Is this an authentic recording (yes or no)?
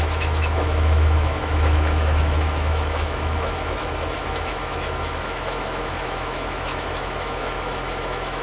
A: no